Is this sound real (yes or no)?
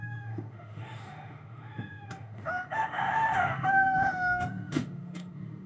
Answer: no